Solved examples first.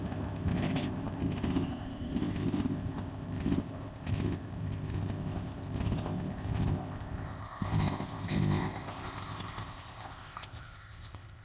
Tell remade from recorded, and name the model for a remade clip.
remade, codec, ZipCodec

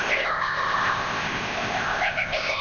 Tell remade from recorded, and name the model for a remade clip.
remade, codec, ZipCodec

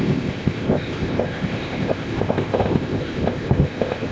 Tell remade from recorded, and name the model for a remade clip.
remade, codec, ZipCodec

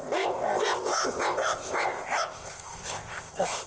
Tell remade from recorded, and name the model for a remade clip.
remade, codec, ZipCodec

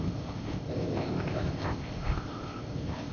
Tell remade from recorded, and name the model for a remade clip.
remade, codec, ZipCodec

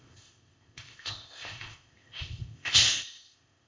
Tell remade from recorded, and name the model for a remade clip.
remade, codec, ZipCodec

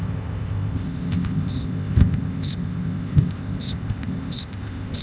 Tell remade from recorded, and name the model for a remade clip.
remade, codec, ZipCodec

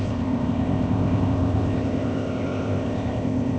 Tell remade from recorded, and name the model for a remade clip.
remade, codec, ZipCodec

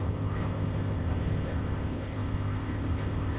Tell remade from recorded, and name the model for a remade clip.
remade, codec, ZipCodec